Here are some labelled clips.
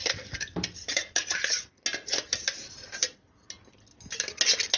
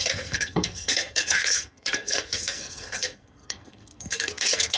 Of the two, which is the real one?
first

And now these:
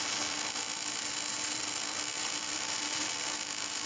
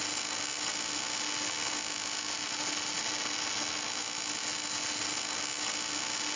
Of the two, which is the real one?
second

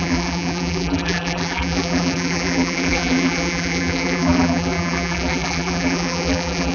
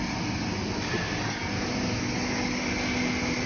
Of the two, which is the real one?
second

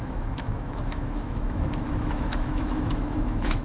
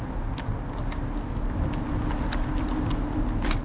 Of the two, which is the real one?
second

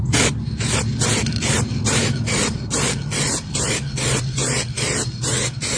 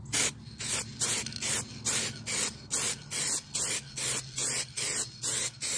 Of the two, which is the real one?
second